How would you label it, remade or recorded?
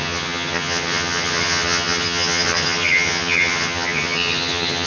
remade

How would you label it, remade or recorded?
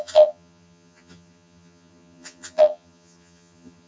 remade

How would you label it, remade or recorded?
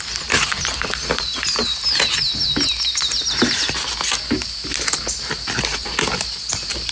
recorded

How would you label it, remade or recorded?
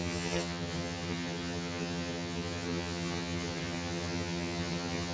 remade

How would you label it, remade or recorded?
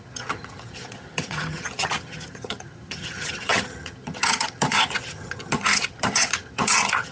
remade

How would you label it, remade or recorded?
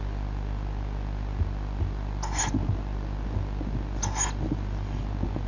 recorded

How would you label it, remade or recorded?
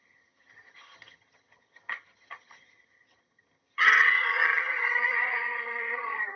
remade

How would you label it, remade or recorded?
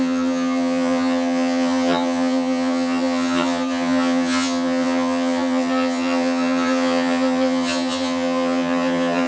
remade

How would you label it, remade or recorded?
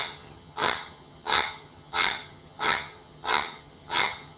remade